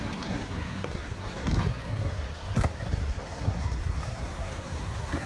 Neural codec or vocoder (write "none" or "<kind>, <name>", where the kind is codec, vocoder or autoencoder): codec, SNAC